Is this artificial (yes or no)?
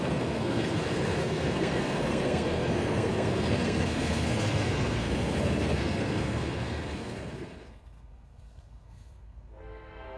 yes